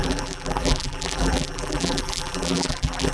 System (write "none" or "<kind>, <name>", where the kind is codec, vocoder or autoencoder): vocoder, BigVGAN v2